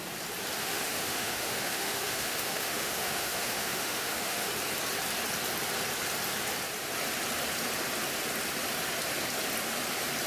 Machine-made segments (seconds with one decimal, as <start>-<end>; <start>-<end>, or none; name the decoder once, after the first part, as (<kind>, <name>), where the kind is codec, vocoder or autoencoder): 0.6-4.5 (autoencoder, DAC-VAE)